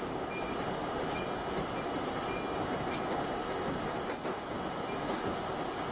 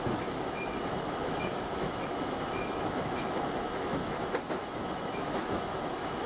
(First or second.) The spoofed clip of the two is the second